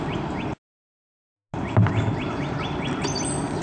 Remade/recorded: recorded